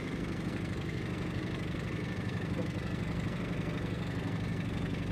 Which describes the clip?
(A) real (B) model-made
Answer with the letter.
B